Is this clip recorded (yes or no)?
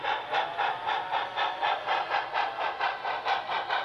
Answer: yes